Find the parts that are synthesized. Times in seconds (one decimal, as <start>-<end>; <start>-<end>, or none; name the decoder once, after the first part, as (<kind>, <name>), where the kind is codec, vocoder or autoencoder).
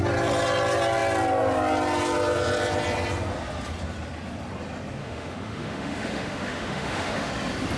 5.0-7.3 (autoencoder, DAC-VAE)